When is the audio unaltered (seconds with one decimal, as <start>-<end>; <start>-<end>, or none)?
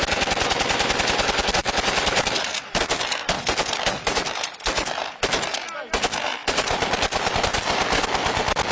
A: 0.0-1.6; 5.1-6.4; 7.3-8.7